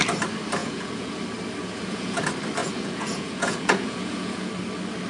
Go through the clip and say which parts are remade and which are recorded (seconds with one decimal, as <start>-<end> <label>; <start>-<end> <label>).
0.0-0.6 recorded; 0.6-1.2 remade; 1.2-1.6 recorded; 1.6-2.2 remade; 2.2-2.6 recorded; 2.6-4.5 remade; 4.5-5.1 recorded